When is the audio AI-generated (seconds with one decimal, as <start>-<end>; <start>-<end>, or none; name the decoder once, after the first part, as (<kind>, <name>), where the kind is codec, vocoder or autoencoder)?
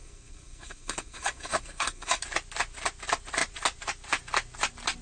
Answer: 0.0-2.2 (codec, SNAC)